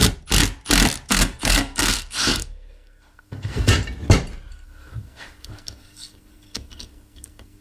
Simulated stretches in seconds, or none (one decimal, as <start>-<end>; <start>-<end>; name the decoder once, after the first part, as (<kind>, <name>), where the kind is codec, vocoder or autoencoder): 1.1-3.7 (codec, SNAC); 4.5-7.6